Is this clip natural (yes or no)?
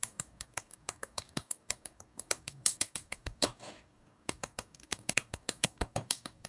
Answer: no